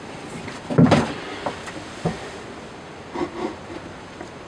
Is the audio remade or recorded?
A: recorded